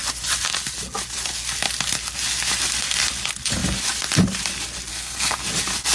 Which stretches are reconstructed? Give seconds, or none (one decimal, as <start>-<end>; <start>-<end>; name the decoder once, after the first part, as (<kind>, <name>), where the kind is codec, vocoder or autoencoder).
4.9-5.4 (codec, SNAC)